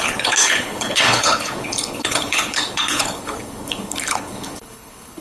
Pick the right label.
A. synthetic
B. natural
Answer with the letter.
A